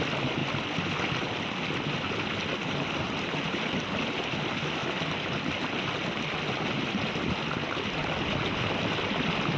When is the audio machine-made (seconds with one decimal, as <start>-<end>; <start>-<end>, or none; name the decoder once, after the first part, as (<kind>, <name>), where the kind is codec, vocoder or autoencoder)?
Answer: none